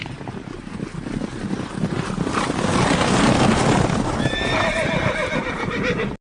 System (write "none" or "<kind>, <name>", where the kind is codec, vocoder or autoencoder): none